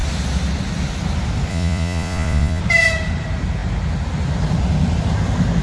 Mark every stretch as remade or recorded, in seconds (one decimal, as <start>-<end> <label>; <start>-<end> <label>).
0.0-1.5 recorded; 1.5-2.6 remade; 2.6-5.6 recorded